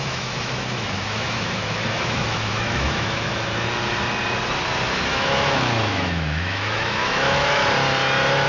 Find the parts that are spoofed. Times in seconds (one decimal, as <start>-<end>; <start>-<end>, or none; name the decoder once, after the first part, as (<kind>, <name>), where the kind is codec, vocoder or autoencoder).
0.0-3.3 (autoencoder, DAC-VAE); 5.0-7.6